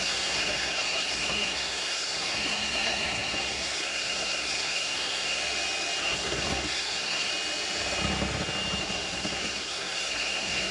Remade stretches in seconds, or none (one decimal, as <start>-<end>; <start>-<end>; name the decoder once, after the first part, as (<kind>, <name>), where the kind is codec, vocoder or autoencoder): 0.0-5.4 (codec, SNAC); 6.0-7.3; 8.8-10.7